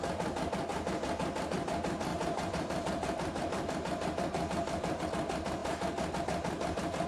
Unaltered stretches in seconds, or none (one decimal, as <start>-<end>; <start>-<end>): 0.0-2.1; 5.0-7.1